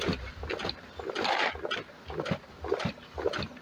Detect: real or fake real